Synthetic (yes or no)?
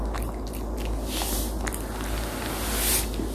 no